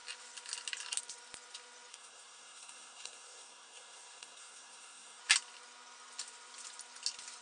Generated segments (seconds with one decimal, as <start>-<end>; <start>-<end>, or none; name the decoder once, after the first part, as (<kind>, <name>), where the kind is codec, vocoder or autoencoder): 1.9-5.2 (codec, SNAC)